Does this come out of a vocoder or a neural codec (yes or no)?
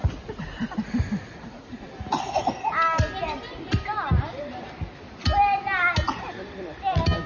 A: no